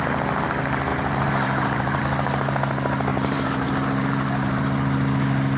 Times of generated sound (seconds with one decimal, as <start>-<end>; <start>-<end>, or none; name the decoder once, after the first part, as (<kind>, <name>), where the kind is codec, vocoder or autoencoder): 0.9-2.0 (vocoder, BigVGAN v2); 3.1-4.6

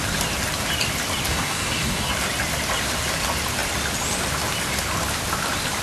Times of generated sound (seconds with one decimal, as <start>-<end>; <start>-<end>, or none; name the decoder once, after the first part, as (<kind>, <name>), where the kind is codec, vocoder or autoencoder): 1.3-2.1 (codec, DAC)

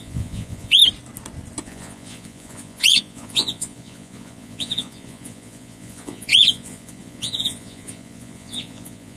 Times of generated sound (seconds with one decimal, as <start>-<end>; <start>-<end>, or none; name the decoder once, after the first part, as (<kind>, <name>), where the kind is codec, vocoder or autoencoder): 0.0-0.8 (vocoder, Vocos); 1.6-9.2